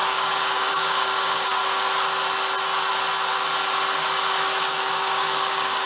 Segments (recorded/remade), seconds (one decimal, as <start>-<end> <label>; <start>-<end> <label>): 0.0-1.6 remade; 1.6-4.6 recorded; 4.6-5.9 remade